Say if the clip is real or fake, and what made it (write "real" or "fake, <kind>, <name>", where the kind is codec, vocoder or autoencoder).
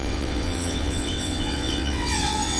fake, vocoder, WaveNeXt